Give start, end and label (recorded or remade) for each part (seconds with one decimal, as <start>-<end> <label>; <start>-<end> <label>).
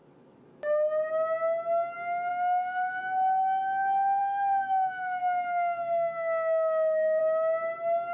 0.0-2.3 recorded; 2.3-3.0 remade; 3.0-4.2 recorded; 4.2-7.2 remade; 7.2-8.1 recorded